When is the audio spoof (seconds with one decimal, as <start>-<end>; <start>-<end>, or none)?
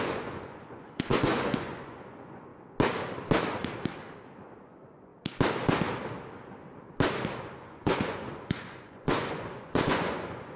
0.0-2.5; 4.6-5.1; 7.4-10.6